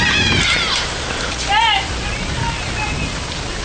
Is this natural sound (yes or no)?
yes